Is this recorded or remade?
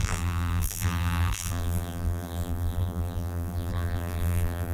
remade